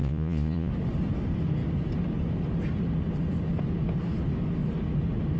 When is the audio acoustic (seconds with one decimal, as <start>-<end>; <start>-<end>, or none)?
0.7-5.4